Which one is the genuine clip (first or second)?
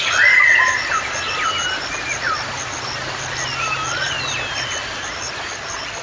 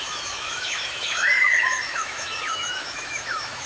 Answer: first